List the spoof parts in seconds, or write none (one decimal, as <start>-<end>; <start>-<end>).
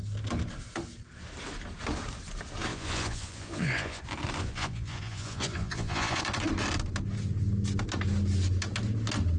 2.7-4.0; 4.4-6.2